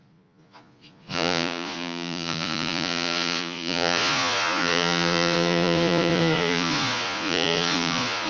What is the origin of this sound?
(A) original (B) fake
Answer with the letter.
B